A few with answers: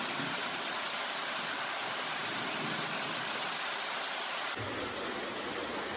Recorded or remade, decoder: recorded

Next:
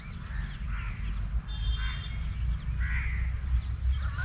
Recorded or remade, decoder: recorded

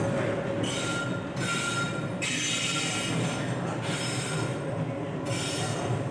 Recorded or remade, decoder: recorded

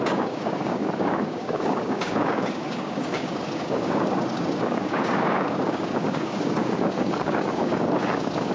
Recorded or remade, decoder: remade, codec, DAC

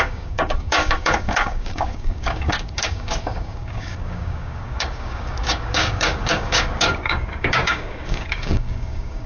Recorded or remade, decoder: remade, codec, DAC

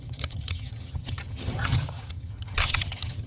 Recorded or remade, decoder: remade, vocoder, HiFi-GAN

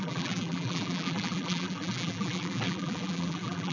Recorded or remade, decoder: remade, vocoder, BigVGAN v2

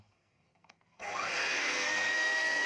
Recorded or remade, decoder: remade, codec, SNAC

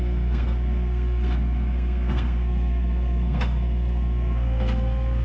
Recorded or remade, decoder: remade, codec, SNAC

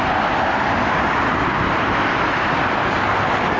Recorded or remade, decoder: recorded